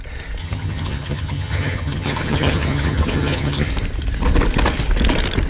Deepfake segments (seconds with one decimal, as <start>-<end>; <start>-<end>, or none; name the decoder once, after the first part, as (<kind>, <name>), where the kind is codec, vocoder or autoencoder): 0.4-3.7 (vocoder, HiFi-GAN)